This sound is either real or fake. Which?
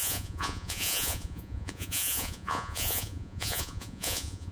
fake